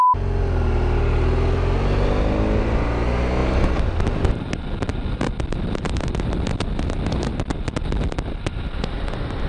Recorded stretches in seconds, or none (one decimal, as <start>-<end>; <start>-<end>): 0.0-9.5